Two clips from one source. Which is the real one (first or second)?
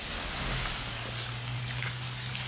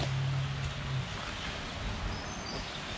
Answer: second